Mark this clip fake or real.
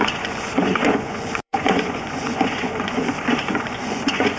fake